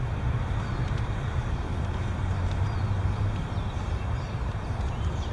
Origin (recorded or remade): remade